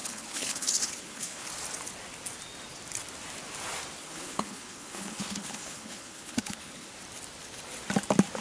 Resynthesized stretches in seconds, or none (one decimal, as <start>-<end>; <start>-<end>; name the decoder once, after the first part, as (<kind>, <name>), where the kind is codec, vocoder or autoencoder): 0.0-1.5 (codec, HILCodec); 4.0-6.9